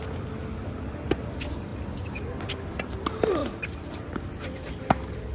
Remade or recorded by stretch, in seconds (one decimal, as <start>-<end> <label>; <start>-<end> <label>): 0.0-3.4 recorded; 3.4-4.7 remade; 4.7-5.3 recorded